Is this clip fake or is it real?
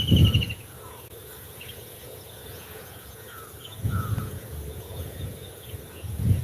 fake